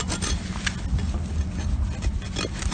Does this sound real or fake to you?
real